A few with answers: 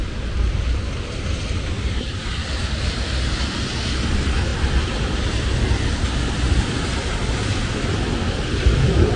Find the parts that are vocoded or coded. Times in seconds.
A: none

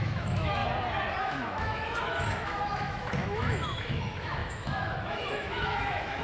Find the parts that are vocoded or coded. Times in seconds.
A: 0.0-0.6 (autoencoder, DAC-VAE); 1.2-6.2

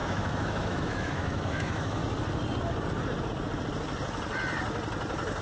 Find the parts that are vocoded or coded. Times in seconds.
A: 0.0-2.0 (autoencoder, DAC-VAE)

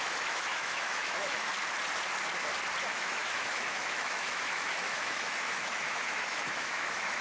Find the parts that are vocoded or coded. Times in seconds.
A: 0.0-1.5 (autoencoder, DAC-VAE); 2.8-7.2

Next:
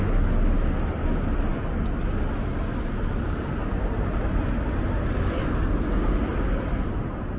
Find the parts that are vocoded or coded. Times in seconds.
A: none

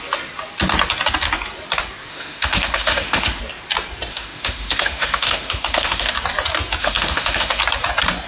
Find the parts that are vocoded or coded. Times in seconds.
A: 2.1-3.4 (autoencoder, DAC-VAE); 4.1-6.1; 6.8-7.6

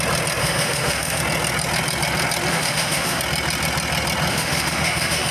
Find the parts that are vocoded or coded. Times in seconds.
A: 0.4-1.2 (autoencoder, DAC-VAE); 2.5-3.2; 4.3-5.3